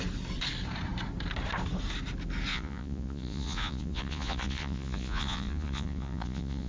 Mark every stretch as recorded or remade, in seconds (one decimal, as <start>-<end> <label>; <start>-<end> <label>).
0.0-2.5 recorded; 2.5-6.7 remade